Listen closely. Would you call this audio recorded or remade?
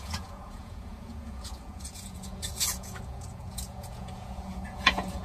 remade